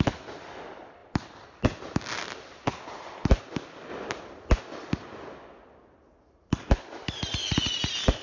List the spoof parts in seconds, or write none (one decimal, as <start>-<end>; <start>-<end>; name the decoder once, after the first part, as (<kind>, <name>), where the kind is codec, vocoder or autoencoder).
none